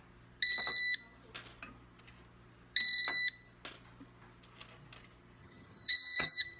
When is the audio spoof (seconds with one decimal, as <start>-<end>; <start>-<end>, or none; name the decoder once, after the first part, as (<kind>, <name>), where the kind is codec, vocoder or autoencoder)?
5.4-6.6 (vocoder, HiFi-GAN)